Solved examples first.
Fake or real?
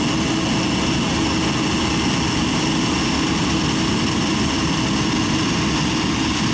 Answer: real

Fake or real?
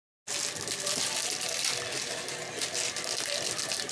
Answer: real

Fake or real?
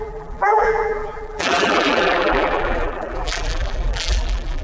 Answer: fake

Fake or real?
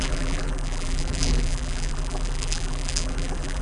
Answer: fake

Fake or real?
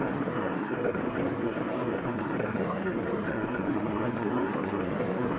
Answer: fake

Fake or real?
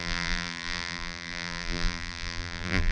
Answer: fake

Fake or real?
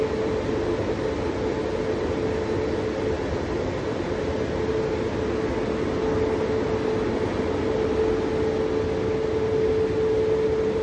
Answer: real